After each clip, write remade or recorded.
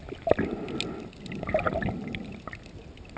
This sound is recorded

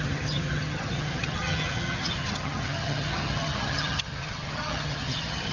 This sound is remade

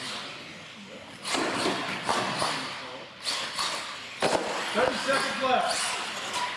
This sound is recorded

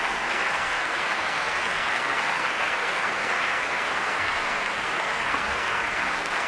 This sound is remade